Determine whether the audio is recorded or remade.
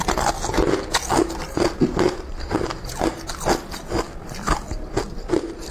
recorded